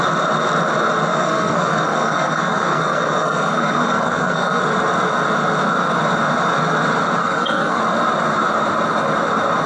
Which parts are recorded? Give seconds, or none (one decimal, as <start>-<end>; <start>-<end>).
0.0-1.1; 4.6-7.2; 7.8-9.7